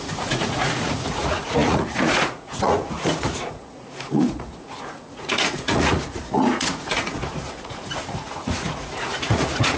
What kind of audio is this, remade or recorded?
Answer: remade